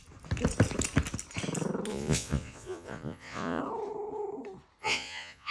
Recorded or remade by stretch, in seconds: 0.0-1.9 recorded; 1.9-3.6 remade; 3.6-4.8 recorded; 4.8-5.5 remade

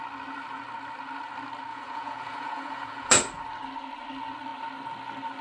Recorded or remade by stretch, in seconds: 0.0-1.7 recorded; 1.7-3.1 remade; 3.1-5.4 recorded

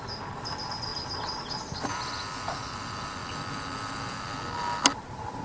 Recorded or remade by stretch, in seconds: 0.0-5.4 recorded

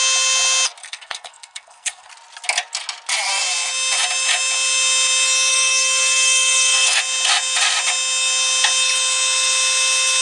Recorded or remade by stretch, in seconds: 0.0-0.8 recorded; 0.8-2.1 remade; 2.1-5.5 recorded; 5.5-7.0 remade; 7.0-10.2 recorded